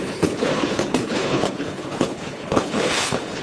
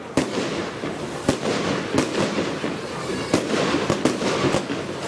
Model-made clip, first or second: first